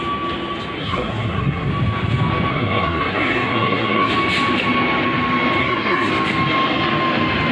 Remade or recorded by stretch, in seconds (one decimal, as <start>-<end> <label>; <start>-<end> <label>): 0.0-0.8 recorded; 0.8-1.7 remade; 1.7-2.5 recorded; 2.5-4.1 remade; 4.1-5.6 recorded; 5.6-6.1 remade; 6.1-7.5 recorded

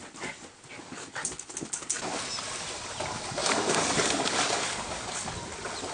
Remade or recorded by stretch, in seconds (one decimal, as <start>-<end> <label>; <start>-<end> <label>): 0.0-0.8 recorded; 0.8-1.5 remade; 1.5-3.4 recorded; 3.4-5.3 remade; 5.3-5.9 recorded

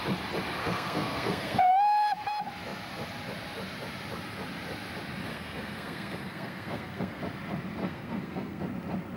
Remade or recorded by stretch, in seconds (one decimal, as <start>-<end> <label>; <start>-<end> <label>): 0.0-0.6 recorded; 0.6-1.7 remade; 1.7-5.3 recorded; 5.3-7.2 remade; 7.2-7.8 recorded; 7.8-8.6 remade; 8.6-9.2 recorded

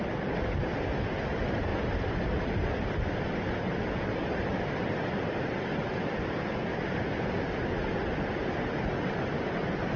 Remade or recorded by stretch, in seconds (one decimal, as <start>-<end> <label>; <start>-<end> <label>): 0.0-10.0 recorded

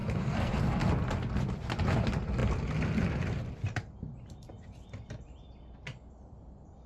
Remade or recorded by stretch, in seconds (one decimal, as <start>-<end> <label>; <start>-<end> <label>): 0.0-0.9 remade; 0.9-6.9 recorded

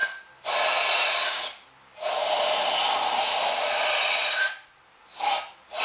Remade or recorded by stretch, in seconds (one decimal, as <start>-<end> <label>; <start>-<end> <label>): 0.0-5.8 recorded